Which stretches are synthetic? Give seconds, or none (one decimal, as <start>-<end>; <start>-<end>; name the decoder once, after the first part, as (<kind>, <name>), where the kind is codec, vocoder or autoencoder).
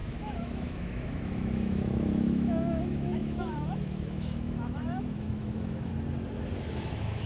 0.0-5.9 (autoencoder, DAC-VAE); 6.7-7.3